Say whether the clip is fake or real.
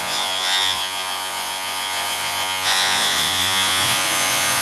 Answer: fake